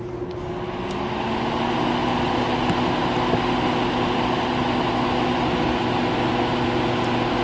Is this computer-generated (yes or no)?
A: no